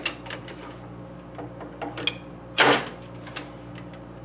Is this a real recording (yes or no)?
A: yes